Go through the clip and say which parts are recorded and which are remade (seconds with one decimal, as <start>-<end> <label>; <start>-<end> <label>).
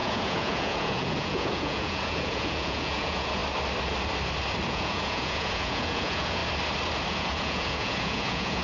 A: 0.0-3.4 remade; 3.4-4.7 recorded; 4.7-6.4 remade; 6.4-7.1 recorded; 7.1-8.6 remade